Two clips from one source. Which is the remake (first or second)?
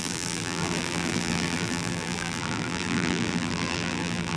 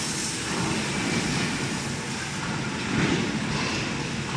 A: first